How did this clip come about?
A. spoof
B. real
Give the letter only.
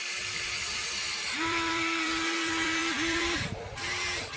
A